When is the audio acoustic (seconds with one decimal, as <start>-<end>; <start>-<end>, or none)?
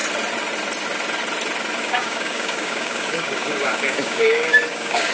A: 0.0-1.8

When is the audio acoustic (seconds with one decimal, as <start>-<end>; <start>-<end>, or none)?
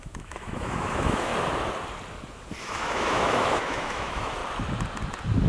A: 1.3-2.6; 4.4-5.5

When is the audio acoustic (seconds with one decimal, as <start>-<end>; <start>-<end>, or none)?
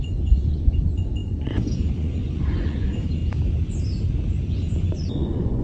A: 3.2-4.5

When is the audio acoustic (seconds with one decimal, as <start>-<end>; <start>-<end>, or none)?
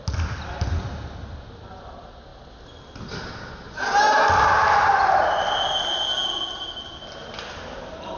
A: 0.0-8.2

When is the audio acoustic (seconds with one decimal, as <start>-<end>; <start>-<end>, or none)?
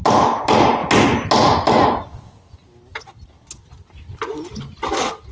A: 0.0-5.3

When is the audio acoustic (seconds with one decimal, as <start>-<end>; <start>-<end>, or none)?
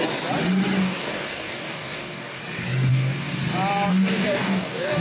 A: 0.0-0.8; 2.4-2.9; 3.4-3.9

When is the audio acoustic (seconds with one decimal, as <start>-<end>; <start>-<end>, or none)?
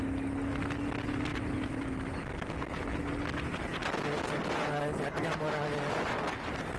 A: 0.0-1.3; 2.3-6.8